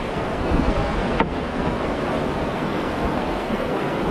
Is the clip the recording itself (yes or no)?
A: no